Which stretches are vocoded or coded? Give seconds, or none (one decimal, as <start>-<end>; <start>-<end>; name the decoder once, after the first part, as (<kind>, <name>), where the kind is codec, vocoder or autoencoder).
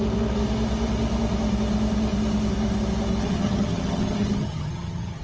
3.2-5.2 (vocoder, HiFi-GAN)